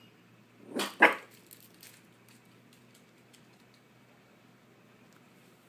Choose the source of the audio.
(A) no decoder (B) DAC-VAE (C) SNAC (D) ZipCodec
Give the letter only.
A